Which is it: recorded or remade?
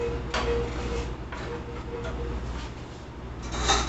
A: recorded